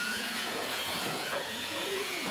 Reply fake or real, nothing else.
fake